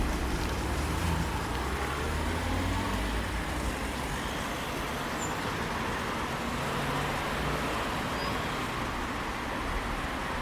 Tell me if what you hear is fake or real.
real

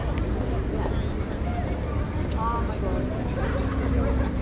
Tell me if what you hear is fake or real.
real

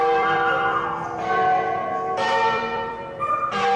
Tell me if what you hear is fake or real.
fake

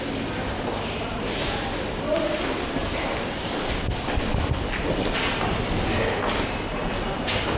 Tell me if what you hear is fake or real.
real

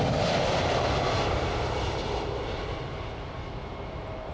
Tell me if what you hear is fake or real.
real